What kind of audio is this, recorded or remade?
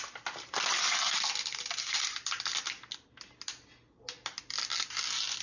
recorded